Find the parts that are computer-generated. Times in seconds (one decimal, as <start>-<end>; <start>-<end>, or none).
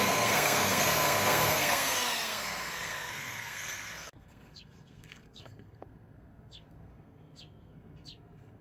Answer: 0.0-8.6